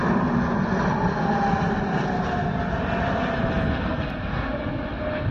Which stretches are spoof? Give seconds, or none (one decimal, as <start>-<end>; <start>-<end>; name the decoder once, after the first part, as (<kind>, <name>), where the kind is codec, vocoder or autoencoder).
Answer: none